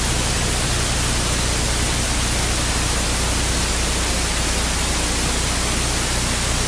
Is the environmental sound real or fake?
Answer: real